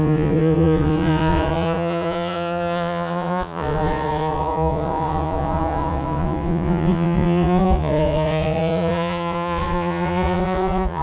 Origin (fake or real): fake